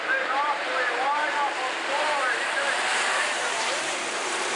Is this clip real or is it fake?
fake